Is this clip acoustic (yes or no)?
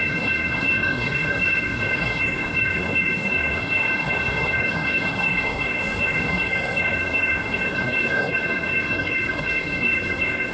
no